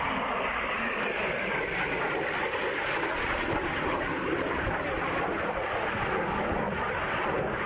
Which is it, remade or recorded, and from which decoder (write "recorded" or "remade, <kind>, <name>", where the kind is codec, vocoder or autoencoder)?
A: recorded